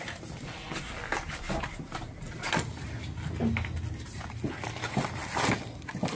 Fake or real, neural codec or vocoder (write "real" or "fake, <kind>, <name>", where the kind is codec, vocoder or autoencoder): real